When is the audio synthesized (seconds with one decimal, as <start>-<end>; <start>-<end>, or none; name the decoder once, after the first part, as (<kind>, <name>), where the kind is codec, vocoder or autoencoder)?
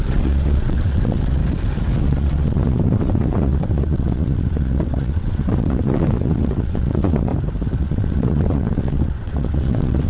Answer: 0.0-1.4 (vocoder, WaveNeXt); 2.0-7.3; 7.8-10.1